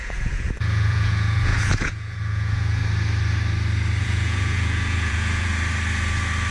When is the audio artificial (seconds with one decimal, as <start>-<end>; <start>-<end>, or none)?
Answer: 0.0-2.8; 4.0-5.5